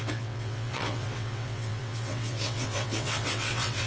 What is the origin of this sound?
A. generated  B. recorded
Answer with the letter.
A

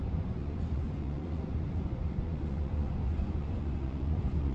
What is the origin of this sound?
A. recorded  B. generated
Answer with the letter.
B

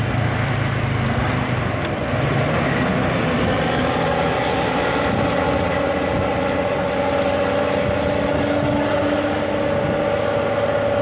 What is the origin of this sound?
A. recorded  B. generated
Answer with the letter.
A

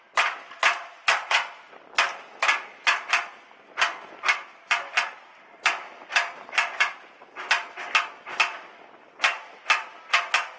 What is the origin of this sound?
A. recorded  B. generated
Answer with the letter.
A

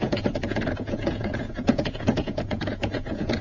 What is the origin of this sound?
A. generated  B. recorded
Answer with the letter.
A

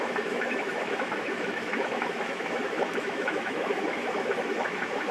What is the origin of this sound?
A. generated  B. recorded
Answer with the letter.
A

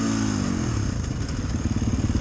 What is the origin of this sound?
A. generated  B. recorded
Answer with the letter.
B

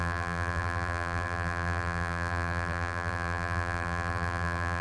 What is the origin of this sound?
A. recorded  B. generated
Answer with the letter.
B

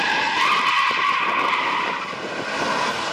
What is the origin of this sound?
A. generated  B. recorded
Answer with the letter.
B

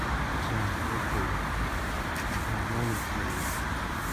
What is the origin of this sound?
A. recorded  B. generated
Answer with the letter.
A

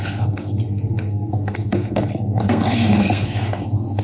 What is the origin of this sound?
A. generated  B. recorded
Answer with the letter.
A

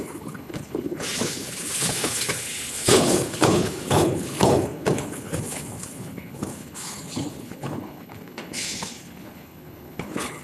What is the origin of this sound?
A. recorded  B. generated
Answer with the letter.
B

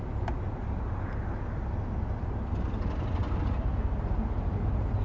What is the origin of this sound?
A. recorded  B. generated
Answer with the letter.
A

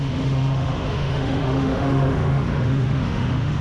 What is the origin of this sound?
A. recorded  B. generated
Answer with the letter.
B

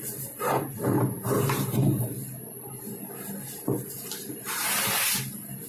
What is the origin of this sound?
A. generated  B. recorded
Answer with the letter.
B